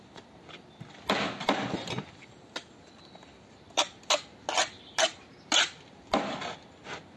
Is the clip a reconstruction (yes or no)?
no